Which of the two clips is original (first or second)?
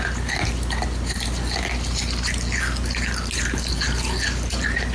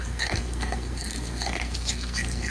first